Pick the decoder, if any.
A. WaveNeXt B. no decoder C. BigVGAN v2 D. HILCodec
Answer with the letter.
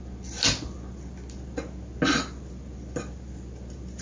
B